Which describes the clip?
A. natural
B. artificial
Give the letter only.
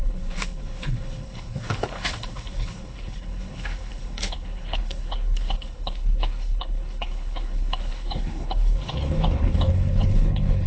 B